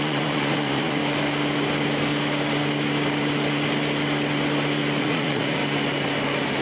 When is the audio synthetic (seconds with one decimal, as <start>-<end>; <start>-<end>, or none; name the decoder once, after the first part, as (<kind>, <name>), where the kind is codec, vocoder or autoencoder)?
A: 0.0-1.0 (vocoder, Vocos); 5.0-5.6